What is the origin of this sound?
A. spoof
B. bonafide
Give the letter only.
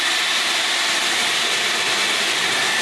B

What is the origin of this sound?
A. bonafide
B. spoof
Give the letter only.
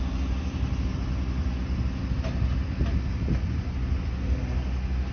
A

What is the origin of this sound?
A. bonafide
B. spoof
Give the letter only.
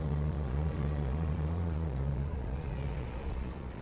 B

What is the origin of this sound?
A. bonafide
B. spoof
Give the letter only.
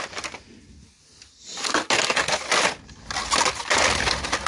A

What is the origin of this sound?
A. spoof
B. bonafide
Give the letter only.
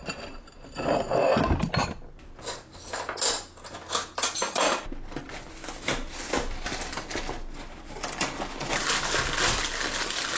B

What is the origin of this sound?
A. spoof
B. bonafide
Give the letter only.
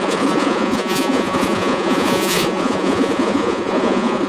A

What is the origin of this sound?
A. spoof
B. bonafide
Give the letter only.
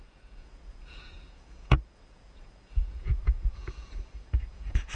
A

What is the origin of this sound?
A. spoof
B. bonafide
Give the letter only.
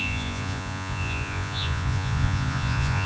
A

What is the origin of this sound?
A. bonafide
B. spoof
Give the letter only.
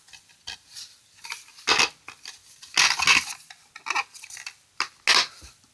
A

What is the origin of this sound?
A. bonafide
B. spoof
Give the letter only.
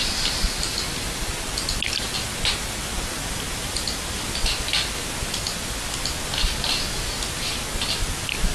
A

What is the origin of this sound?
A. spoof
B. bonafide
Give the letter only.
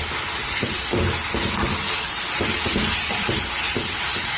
B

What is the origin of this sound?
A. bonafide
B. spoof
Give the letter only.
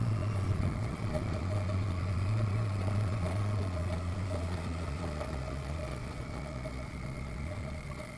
B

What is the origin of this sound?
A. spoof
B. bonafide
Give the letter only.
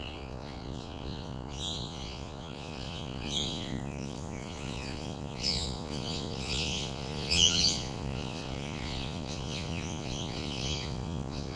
A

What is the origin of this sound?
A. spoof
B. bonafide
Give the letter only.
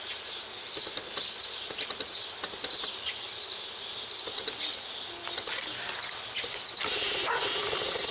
B